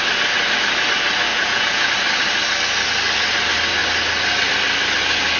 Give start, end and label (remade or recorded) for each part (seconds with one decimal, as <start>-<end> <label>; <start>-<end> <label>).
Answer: 0.0-1.3 recorded; 1.3-1.9 remade; 1.9-5.4 recorded